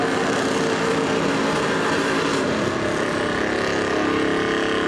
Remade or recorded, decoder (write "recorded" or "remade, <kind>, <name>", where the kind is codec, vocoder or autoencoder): recorded